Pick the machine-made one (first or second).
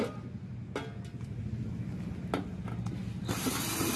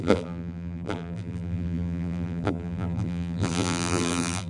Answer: second